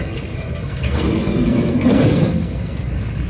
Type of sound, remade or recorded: remade